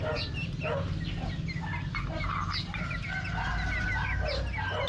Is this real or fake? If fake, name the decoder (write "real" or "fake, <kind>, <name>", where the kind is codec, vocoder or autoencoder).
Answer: real